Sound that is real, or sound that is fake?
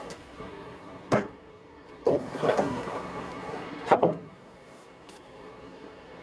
fake